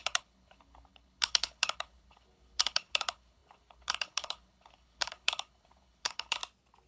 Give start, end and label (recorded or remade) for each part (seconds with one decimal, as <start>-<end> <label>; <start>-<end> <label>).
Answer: 0.0-6.4 remade; 6.4-6.9 recorded